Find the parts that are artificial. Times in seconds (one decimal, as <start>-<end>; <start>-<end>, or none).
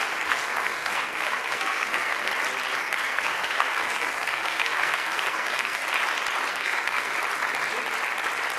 0.0-2.3; 2.8-5.8; 6.5-7.1